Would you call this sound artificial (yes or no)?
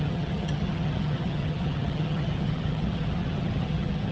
yes